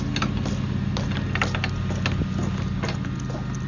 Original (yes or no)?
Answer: yes